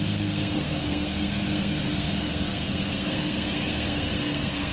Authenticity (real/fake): fake